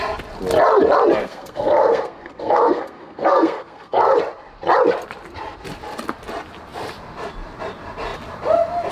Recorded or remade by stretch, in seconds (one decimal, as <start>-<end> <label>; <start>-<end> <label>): 0.0-1.2 recorded; 1.2-4.1 remade; 4.1-8.9 recorded